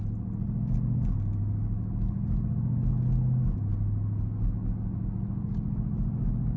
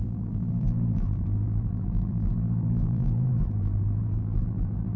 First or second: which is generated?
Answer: second